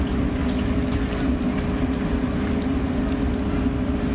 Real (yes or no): yes